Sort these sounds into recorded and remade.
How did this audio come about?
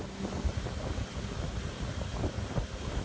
recorded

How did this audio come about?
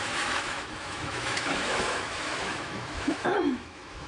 remade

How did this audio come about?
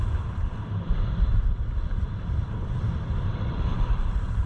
remade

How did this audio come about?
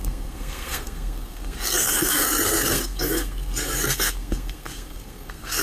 remade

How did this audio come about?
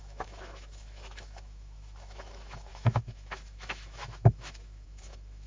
remade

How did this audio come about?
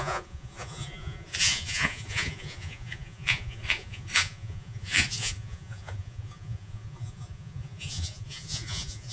remade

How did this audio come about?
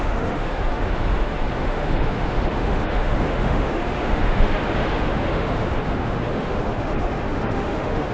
remade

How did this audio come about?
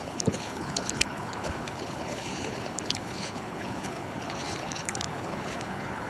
remade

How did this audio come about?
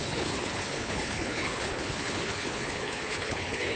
remade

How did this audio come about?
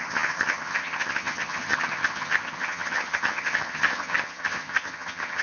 remade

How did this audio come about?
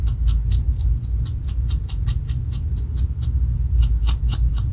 recorded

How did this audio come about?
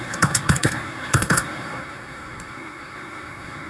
remade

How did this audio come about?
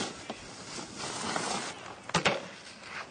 recorded